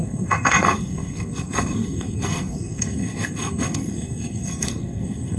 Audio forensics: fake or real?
fake